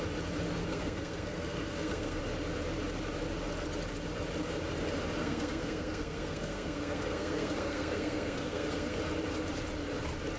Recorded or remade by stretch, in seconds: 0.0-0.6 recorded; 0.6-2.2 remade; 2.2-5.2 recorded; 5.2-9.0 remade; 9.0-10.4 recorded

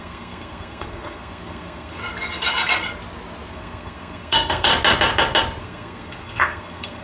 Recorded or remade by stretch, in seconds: 0.0-2.0 remade; 2.0-3.5 recorded; 3.5-4.7 remade; 4.7-5.6 recorded; 5.6-7.0 remade